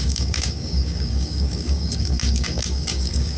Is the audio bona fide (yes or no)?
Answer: no